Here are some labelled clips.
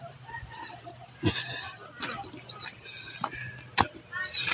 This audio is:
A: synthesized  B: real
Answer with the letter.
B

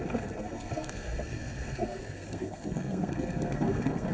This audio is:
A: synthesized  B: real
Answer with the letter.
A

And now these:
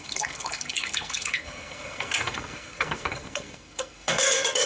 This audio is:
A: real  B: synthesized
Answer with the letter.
B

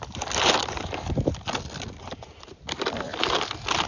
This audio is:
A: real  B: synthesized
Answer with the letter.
A